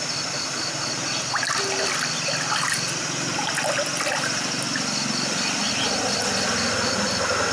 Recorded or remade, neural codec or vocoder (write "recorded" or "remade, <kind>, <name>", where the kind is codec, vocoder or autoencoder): recorded